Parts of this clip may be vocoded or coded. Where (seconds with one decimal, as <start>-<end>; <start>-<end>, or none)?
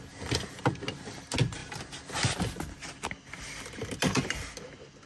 none